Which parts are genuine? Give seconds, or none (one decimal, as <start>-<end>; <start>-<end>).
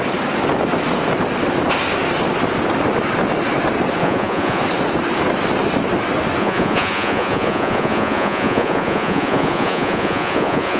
0.0-4.0; 4.6-6.4